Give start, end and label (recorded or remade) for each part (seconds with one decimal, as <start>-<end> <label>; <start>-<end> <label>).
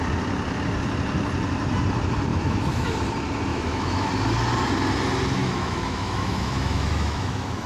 0.0-2.3 recorded; 2.3-2.9 remade; 2.9-3.5 recorded; 3.5-4.1 remade; 4.1-5.4 recorded; 5.4-7.7 remade